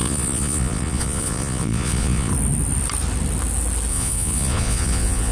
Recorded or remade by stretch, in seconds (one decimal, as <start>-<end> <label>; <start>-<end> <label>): 0.0-2.3 remade; 2.3-3.9 recorded; 3.9-5.3 remade